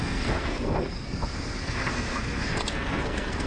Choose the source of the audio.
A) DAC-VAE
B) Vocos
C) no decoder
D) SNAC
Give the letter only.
D